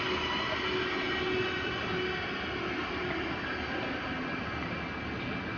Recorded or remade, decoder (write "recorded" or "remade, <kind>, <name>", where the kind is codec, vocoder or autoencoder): recorded